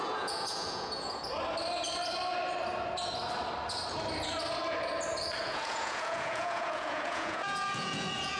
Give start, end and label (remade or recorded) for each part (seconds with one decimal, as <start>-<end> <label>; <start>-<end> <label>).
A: 0.0-1.2 remade; 1.2-5.4 recorded; 5.4-8.4 remade